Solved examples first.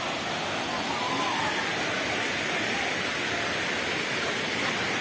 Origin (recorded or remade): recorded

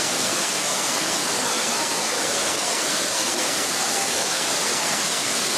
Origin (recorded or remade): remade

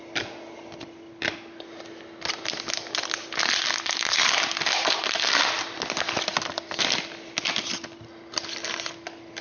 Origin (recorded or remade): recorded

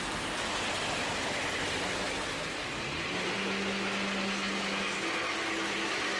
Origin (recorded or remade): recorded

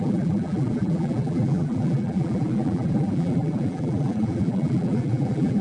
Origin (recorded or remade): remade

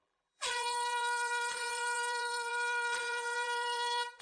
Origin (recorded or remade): remade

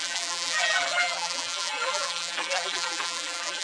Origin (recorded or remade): remade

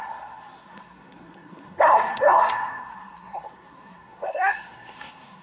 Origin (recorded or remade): remade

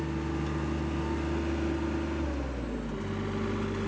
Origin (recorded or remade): recorded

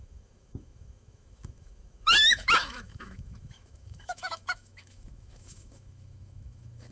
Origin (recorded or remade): remade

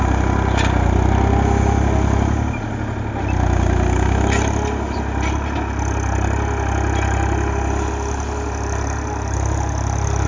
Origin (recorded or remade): recorded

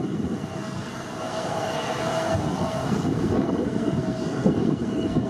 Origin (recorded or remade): remade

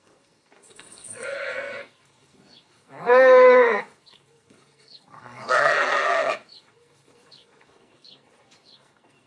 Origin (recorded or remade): remade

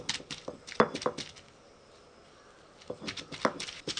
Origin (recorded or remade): recorded